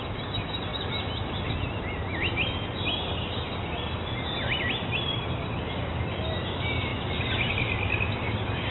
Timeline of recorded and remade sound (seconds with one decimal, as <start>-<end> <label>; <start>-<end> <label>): 0.0-8.7 recorded